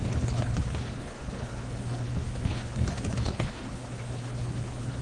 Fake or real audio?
fake